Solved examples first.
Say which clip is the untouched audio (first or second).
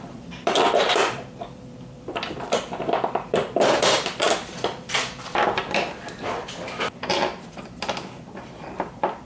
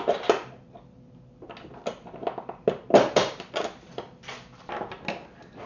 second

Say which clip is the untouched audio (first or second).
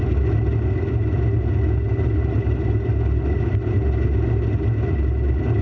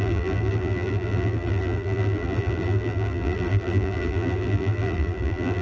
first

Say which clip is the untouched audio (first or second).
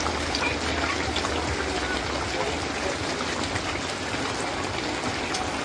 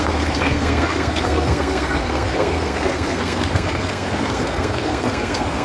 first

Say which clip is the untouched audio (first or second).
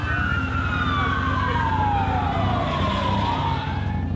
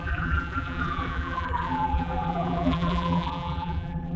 first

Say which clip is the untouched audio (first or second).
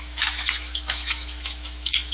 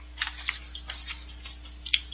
second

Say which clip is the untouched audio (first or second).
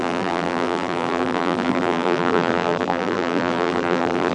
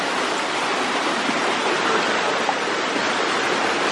second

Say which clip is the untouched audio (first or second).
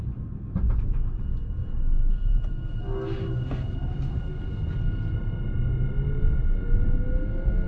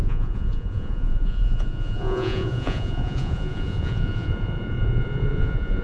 first